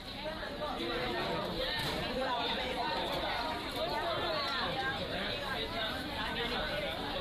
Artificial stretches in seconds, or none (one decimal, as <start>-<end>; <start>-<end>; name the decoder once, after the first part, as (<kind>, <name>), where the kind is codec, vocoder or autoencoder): 1.8-3.5 (vocoder, BigVGAN v2)